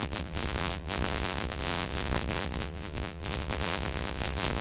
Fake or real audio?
fake